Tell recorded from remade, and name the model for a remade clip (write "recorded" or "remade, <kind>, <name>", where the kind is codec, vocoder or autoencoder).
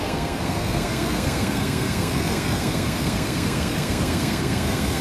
remade, codec, SNAC